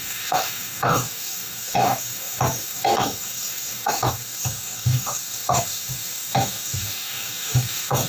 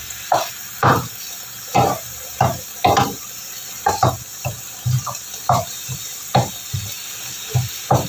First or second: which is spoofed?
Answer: first